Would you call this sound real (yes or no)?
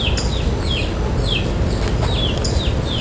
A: yes